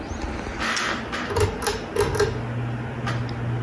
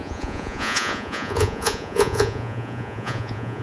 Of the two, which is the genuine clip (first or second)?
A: first